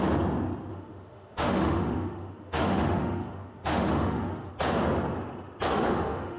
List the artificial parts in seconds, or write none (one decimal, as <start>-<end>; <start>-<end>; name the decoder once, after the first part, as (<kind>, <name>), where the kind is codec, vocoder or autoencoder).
0.7-4.5 (autoencoder, DAC-VAE); 5.7-6.4